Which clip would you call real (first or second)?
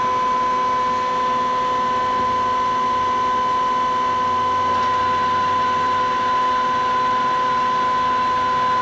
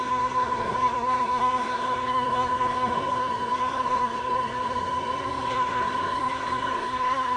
first